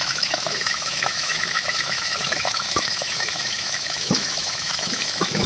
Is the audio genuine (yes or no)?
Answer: no